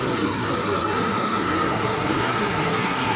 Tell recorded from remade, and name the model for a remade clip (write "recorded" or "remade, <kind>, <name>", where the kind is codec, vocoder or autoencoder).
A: remade, codec, SNAC